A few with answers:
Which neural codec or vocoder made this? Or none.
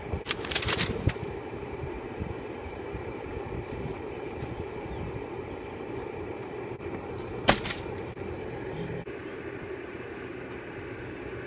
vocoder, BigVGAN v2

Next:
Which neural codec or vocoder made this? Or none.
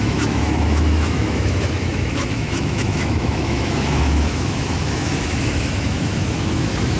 autoencoder, DAC-VAE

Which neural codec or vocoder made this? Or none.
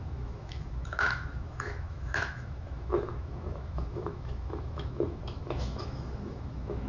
autoencoder, DAC-VAE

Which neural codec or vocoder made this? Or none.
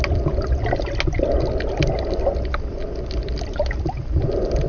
none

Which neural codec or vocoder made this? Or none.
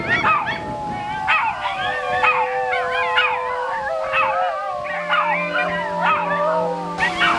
none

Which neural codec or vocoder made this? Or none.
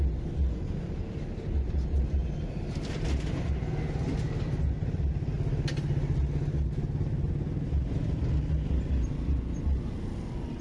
none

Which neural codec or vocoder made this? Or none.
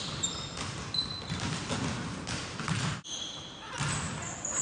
none